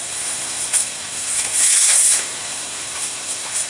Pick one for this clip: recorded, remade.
remade